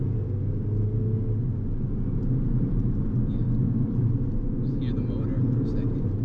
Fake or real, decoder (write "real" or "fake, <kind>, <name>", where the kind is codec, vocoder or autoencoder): real